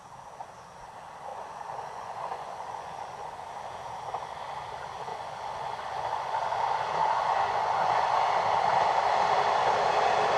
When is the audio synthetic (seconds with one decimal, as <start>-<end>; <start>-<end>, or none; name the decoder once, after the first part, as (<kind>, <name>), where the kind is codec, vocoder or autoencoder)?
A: 1.3-3.4 (vocoder, Vocos); 5.1-6.6; 7.0-8.2